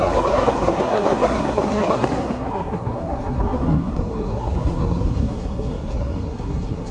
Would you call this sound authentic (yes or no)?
no